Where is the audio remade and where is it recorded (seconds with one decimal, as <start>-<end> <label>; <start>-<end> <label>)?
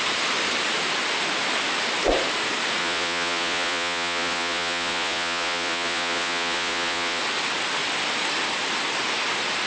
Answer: 0.0-2.8 recorded; 2.8-7.2 remade; 7.2-9.7 recorded